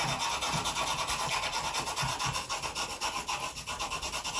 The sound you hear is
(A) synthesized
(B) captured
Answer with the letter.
B